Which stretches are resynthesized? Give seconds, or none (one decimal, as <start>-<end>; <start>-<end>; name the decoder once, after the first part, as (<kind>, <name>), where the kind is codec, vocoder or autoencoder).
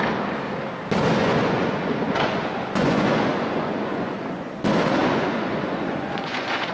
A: 1.2-4.5 (vocoder, Vocos); 5.0-6.7